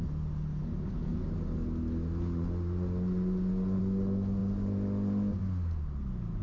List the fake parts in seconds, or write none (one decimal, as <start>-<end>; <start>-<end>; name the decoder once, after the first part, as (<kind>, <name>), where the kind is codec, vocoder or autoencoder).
none